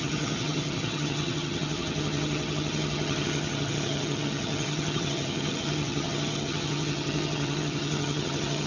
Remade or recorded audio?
remade